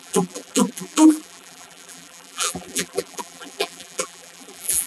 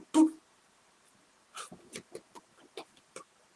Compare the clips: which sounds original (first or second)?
second